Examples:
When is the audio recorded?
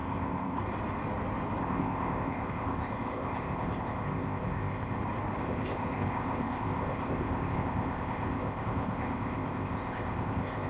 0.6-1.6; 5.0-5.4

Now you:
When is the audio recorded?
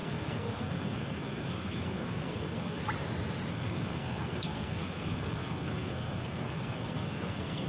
2.8-3.5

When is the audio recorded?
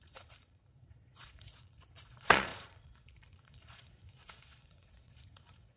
none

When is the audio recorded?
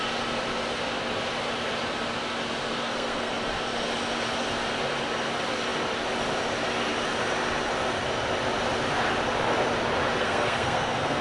0.0-2.7; 3.3-10.2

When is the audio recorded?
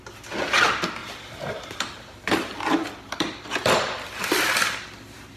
0.0-1.0; 4.2-5.4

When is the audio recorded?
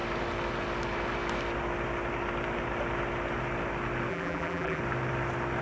0.0-4.1; 4.8-5.6